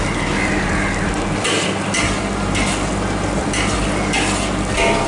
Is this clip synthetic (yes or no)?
no